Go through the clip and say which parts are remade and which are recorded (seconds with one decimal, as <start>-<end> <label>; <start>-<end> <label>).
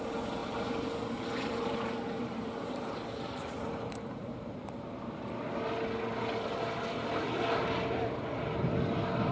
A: 0.0-0.4 recorded; 0.4-5.5 remade; 5.5-9.3 recorded